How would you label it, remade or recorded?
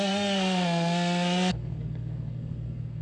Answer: remade